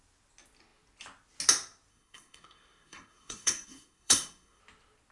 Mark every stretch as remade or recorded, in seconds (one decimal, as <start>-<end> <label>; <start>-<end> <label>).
0.0-1.9 recorded; 1.9-4.6 remade; 4.6-5.1 recorded